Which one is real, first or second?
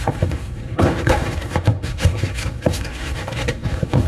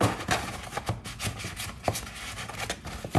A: second